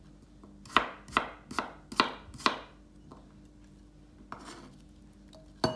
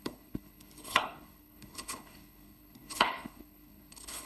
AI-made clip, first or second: second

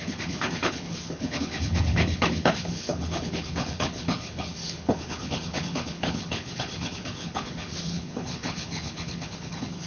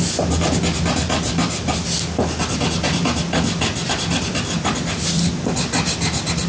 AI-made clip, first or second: first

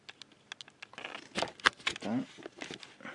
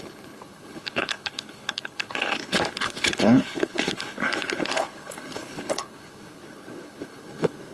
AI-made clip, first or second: second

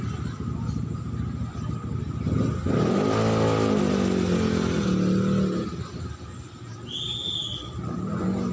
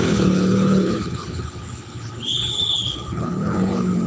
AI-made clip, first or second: second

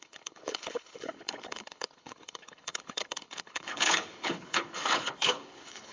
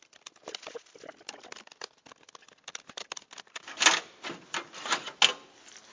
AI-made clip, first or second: first